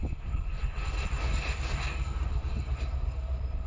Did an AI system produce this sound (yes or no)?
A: no